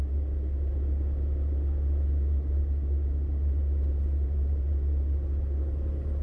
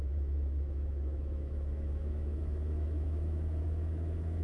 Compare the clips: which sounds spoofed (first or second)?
second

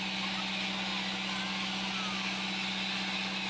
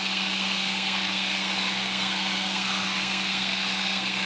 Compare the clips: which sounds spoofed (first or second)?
second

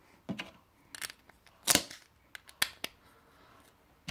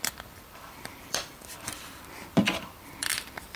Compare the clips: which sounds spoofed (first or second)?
second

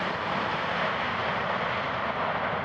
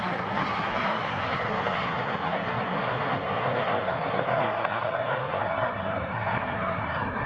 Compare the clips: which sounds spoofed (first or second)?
second